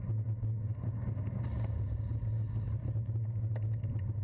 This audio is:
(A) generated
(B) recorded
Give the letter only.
B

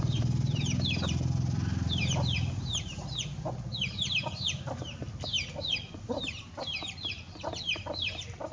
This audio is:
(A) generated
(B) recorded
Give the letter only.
A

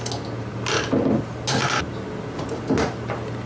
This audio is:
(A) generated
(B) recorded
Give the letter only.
B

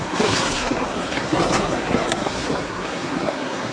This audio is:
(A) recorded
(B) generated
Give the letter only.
B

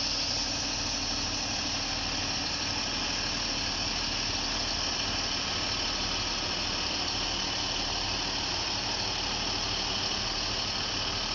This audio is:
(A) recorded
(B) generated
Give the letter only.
A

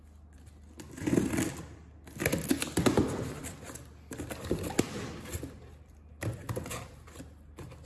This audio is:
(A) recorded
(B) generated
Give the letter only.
A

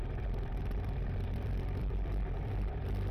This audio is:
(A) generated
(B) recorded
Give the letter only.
A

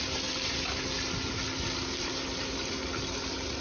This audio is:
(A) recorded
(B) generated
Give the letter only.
A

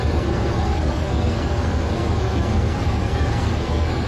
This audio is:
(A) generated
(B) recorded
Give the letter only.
A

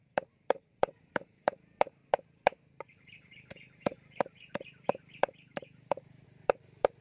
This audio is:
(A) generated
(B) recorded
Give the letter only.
A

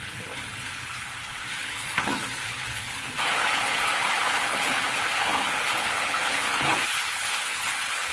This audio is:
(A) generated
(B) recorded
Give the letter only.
A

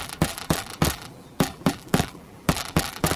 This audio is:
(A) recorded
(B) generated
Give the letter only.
B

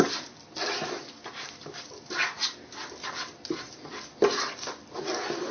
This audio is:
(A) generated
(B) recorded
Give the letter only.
B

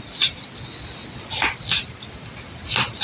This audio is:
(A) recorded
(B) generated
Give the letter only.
A